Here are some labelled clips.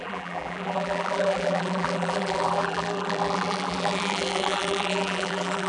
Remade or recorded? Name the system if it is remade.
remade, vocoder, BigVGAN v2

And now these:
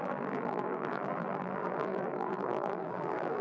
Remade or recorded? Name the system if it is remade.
remade, vocoder, BigVGAN v2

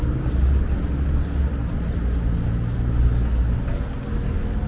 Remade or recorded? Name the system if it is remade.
recorded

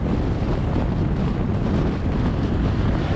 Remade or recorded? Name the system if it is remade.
remade, vocoder, BigVGAN v2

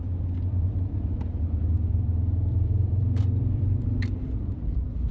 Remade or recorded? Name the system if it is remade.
remade, vocoder, BigVGAN v2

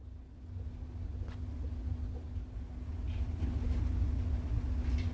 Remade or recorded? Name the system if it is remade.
recorded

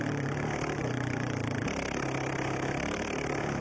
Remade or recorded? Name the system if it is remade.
remade, vocoder, BigVGAN v2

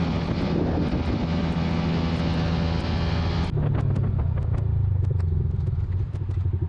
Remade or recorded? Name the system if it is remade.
recorded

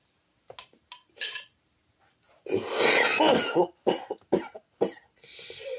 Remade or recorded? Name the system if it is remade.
recorded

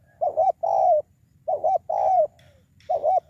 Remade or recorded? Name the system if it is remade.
remade, vocoder, BigVGAN v2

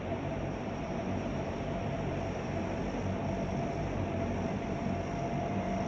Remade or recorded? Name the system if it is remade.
remade, vocoder, BigVGAN v2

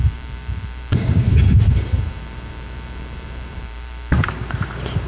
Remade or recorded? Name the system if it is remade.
remade, vocoder, BigVGAN v2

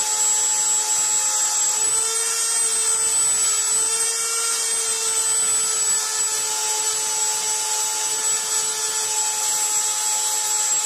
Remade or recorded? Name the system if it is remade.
recorded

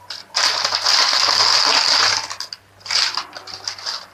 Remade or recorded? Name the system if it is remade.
recorded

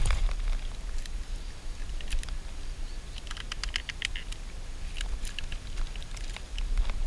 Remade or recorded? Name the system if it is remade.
recorded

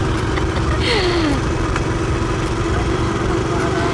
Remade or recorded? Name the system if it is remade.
recorded